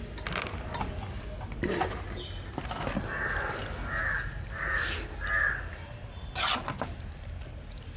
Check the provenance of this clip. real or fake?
real